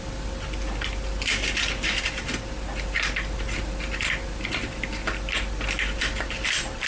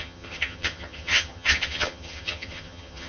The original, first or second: first